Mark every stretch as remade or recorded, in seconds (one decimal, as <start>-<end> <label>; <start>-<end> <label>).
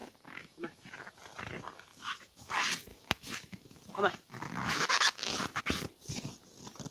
0.0-1.1 remade; 1.1-1.9 recorded; 1.9-2.5 remade; 2.5-2.9 recorded; 2.9-5.6 remade; 5.6-6.9 recorded